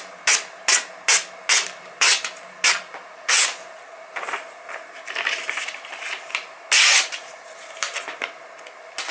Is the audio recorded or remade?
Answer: recorded